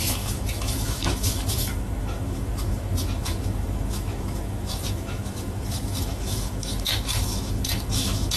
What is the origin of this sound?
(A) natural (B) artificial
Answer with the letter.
B